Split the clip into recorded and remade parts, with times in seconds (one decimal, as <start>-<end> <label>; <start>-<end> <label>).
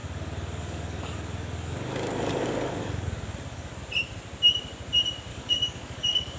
0.0-3.8 remade; 3.8-5.3 recorded; 5.3-6.4 remade